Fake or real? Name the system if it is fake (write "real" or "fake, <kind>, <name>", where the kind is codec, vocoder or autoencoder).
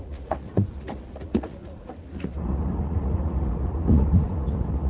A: fake, vocoder, Vocos